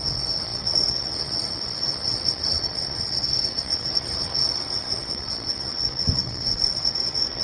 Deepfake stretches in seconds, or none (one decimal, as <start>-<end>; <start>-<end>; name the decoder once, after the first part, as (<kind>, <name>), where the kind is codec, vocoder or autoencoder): 0.0-7.4 (vocoder, WaveNeXt)